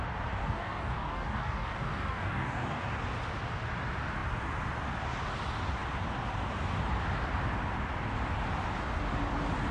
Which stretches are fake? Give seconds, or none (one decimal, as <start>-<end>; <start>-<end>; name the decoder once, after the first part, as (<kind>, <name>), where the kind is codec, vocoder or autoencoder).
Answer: 0.4-2.8 (codec, DAC)